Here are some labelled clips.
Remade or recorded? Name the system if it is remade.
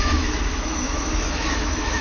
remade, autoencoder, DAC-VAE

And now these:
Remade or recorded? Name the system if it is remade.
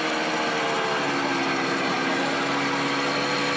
recorded